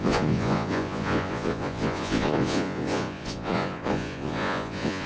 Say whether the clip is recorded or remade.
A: remade